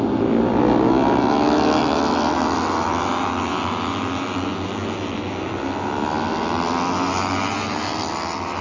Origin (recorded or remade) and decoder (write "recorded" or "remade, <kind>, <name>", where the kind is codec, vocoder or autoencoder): recorded